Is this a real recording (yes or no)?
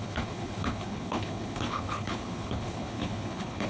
no